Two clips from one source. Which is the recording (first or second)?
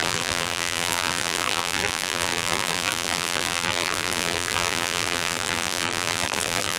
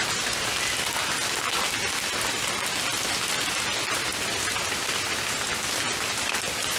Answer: second